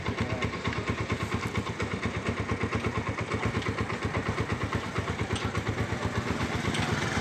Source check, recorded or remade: recorded